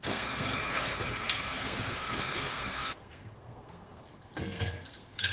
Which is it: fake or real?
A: fake